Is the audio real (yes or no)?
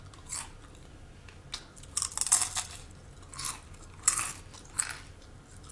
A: yes